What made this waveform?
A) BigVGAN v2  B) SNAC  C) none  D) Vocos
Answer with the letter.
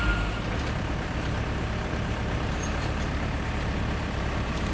A